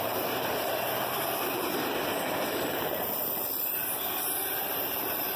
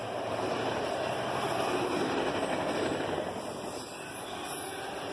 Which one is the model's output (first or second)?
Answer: first